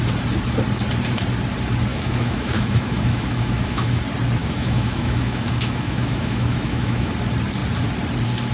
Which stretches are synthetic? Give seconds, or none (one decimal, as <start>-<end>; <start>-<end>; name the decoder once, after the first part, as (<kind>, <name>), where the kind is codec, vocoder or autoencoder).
1.9-4.0 (autoencoder, DAC-VAE); 4.4-7.1